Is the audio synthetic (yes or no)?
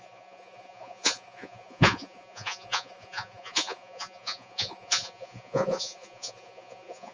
yes